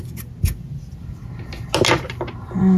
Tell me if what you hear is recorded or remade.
recorded